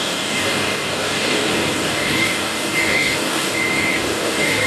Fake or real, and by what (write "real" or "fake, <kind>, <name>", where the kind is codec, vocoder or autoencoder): fake, codec, DAC